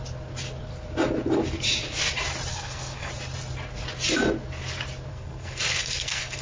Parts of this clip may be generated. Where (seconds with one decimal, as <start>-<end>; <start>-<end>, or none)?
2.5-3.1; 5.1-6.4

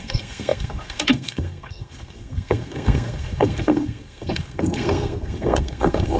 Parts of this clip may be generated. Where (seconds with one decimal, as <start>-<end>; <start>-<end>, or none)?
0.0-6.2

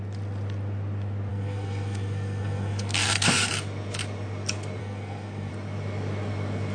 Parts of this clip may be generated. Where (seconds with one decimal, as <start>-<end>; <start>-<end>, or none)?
1.3-3.5; 4.8-5.5

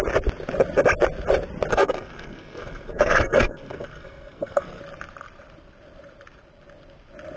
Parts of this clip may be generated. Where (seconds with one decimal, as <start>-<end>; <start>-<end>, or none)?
1.7-4.8

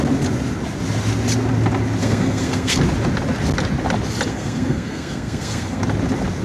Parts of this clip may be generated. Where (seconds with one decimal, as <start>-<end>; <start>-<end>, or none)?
2.0-2.8; 4.3-5.8

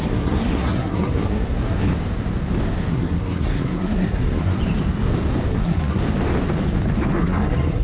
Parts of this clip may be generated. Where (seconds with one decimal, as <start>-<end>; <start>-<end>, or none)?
0.0-1.9; 2.9-4.6; 5.5-6.0; 7.2-7.8